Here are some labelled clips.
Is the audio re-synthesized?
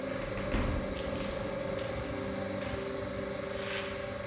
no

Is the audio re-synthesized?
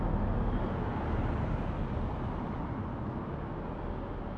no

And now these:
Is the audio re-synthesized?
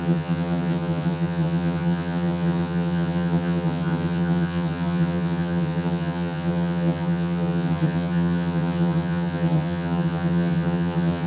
yes